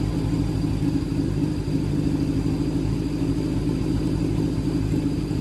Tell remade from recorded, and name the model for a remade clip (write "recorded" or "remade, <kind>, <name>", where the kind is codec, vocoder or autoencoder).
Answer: recorded